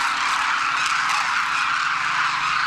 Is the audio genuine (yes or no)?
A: yes